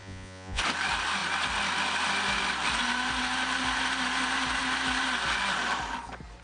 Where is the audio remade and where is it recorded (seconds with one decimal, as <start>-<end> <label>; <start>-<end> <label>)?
0.0-0.6 remade; 0.6-6.4 recorded